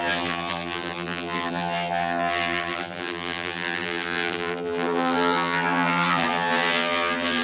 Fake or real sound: fake